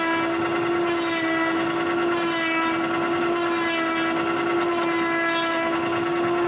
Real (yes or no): yes